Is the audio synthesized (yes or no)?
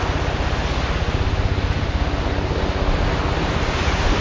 no